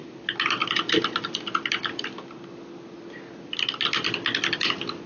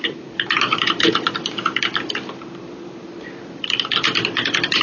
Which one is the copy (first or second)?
second